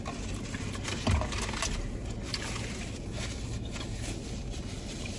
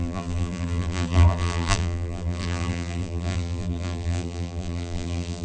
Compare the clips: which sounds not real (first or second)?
second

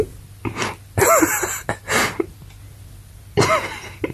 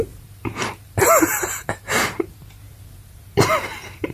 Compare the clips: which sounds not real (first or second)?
second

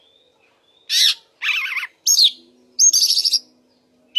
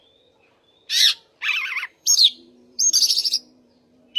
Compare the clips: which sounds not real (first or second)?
second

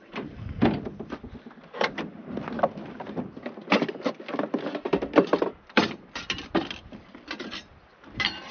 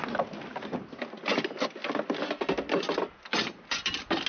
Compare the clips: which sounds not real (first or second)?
first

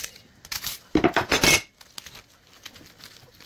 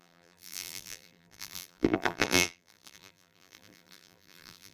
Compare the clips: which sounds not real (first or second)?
second